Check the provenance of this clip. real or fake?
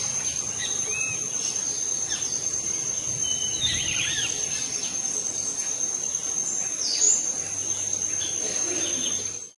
real